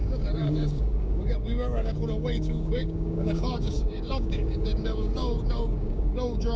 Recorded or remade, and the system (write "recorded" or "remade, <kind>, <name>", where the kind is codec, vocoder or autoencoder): remade, codec, DAC